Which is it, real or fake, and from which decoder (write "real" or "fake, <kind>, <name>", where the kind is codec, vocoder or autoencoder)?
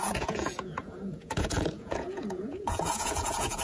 fake, vocoder, Vocos